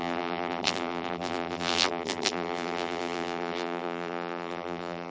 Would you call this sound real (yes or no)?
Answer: no